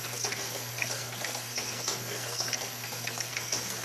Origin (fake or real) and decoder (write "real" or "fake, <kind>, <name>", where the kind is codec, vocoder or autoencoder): fake, codec, SNAC